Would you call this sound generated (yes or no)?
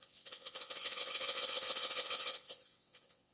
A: yes